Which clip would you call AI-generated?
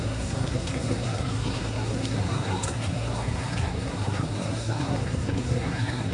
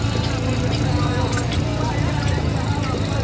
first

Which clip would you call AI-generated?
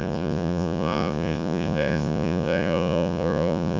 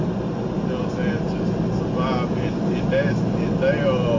first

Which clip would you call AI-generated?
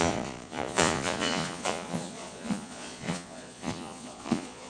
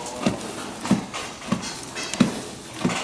first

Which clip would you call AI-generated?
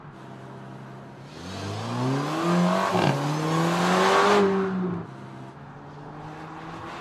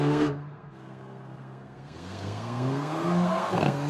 second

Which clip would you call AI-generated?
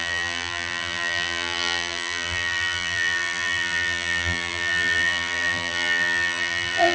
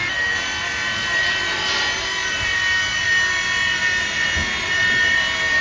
first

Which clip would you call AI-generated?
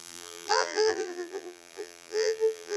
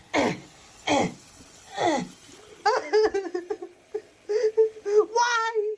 first